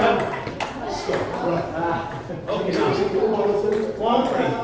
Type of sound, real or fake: real